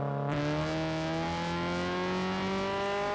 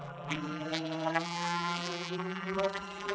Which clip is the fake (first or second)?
second